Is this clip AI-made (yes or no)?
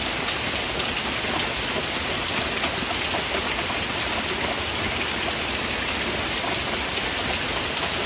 no